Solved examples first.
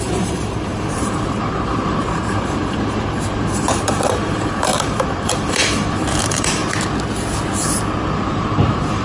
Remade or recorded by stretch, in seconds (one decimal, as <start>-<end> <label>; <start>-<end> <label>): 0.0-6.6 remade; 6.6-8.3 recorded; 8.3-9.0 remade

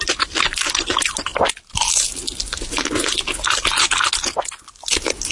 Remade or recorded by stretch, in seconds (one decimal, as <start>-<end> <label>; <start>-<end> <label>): 0.0-5.3 recorded

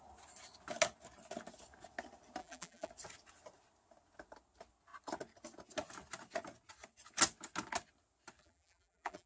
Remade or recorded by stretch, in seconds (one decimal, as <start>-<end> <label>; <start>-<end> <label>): 0.0-2.4 recorded; 2.4-2.9 remade; 2.9-8.4 recorded; 8.4-9.3 remade